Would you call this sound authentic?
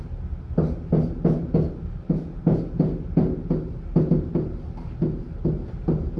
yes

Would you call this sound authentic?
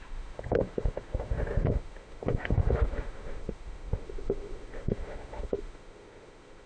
no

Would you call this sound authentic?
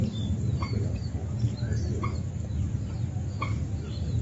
yes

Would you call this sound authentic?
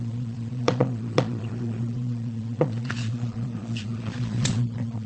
no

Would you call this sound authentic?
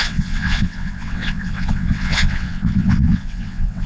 no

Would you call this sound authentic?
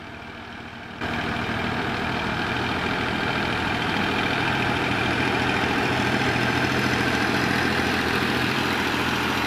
no